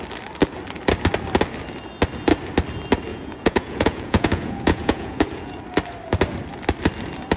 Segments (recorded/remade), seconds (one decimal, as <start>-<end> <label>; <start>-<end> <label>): 0.0-3.1 recorded; 3.1-5.6 remade; 5.6-7.4 recorded